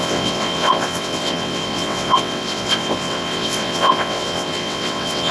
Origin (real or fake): fake